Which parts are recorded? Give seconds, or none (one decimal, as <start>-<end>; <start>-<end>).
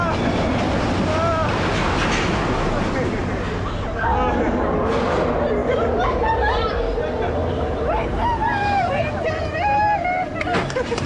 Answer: 0.0-5.6; 6.7-7.4; 9.3-11.1